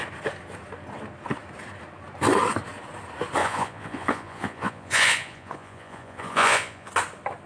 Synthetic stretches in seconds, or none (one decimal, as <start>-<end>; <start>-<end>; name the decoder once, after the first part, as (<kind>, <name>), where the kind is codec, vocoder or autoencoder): 3.4-6.9 (vocoder, Vocos)